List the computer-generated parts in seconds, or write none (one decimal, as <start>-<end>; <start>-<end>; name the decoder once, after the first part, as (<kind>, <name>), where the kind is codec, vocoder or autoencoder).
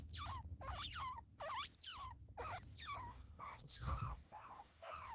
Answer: 3.1-5.1 (codec, SNAC)